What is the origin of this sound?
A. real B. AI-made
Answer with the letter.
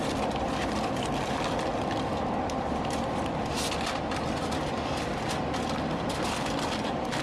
A